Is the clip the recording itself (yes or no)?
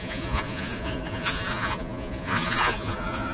no